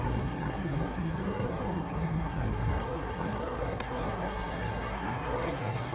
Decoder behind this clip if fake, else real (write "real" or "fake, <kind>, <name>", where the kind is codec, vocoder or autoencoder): fake, codec, SNAC